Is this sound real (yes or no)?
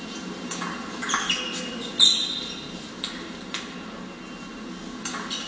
yes